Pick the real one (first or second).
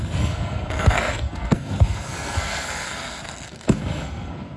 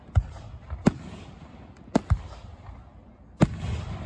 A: second